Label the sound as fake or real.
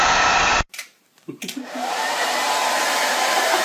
fake